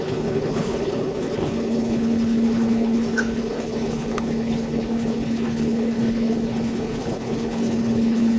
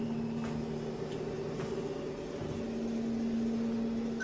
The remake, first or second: first